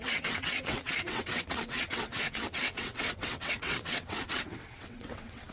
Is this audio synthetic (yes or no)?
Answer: yes